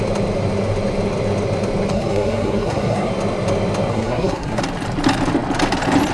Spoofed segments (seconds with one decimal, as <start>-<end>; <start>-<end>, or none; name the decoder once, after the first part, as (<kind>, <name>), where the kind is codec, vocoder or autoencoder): 1.9-3.1 (codec, SNAC); 3.9-4.6